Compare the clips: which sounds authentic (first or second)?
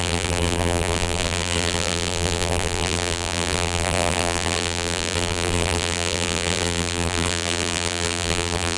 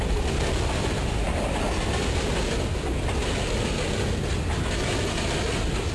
second